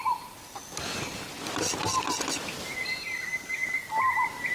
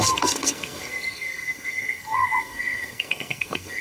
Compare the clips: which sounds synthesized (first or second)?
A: second